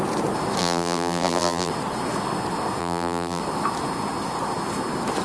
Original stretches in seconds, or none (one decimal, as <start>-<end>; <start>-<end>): 0.0-0.6; 1.7-2.8; 3.4-5.2